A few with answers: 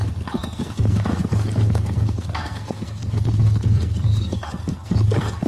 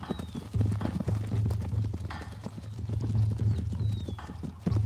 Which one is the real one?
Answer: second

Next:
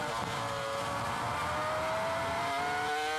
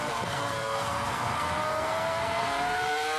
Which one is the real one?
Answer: first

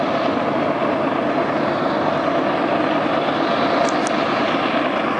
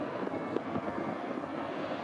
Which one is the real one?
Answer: first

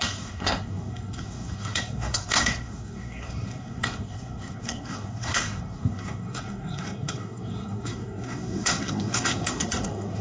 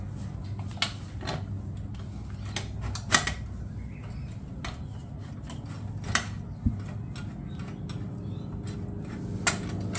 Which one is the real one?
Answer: second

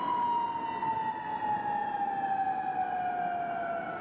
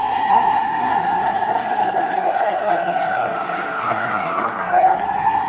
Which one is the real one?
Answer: first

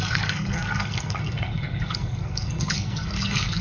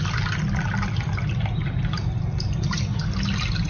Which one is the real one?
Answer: second